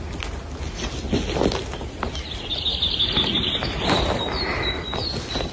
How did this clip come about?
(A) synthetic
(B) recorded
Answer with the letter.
B